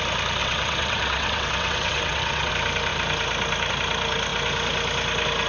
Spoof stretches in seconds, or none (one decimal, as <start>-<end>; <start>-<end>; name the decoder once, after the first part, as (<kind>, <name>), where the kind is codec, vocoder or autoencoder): 0.4-2.5 (vocoder, WaveNeXt)